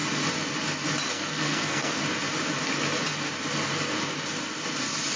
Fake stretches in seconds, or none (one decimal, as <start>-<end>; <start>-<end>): 1.1-2.0